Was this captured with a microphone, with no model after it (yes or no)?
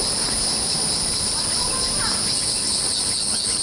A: yes